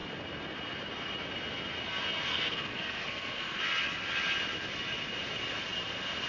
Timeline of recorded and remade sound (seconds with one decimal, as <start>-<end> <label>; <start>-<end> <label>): 0.0-2.3 recorded; 2.3-3.6 remade; 3.6-6.3 recorded